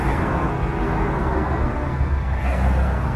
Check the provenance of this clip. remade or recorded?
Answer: remade